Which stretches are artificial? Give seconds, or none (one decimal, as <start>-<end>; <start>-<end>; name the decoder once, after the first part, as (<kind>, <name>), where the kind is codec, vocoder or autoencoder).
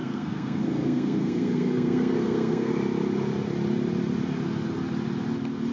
0.0-2.7 (codec, SNAC)